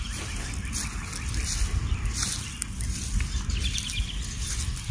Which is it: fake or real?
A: real